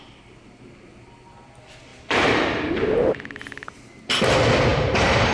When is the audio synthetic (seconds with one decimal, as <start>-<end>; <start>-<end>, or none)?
1.9-2.7; 4.7-5.3